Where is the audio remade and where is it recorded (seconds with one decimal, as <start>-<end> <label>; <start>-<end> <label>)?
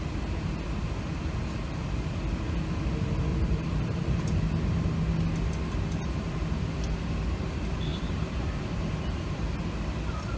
0.0-3.3 recorded; 3.3-4.4 remade; 4.4-10.4 recorded